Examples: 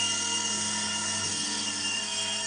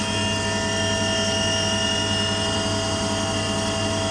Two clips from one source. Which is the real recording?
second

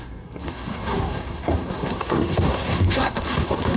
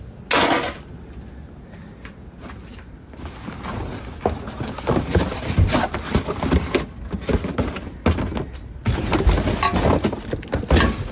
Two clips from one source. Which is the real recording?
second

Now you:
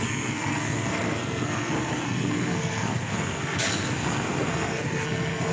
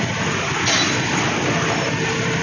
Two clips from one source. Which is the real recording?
second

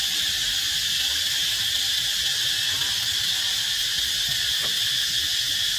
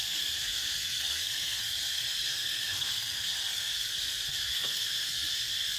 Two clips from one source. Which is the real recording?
first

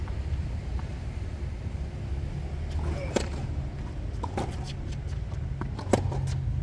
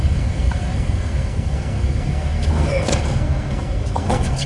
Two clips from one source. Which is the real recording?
first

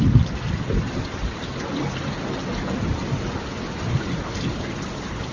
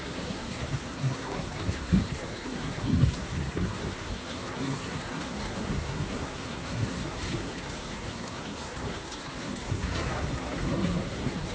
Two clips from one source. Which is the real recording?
first